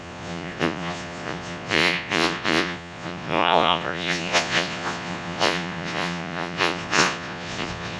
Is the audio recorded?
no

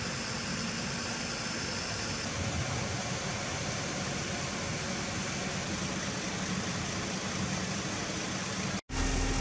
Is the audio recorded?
yes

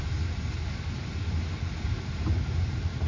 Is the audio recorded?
yes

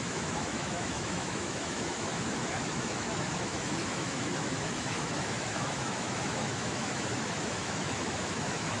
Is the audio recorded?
no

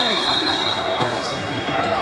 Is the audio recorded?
no